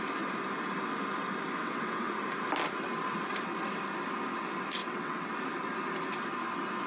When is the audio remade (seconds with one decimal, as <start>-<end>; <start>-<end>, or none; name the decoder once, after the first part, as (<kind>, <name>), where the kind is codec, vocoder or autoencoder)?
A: 1.6-2.1 (vocoder, WaveNeXt); 4.8-5.3